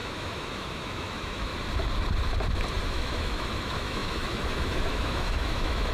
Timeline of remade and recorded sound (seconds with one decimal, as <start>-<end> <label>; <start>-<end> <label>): 0.0-1.5 remade; 1.5-2.8 recorded; 2.8-5.9 remade